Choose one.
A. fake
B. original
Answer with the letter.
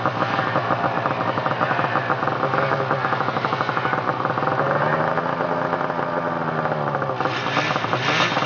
B